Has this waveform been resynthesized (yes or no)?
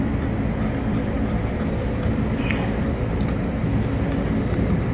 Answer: no